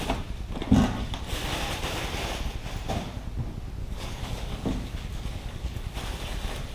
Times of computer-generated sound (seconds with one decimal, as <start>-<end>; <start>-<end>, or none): 3.8-6.0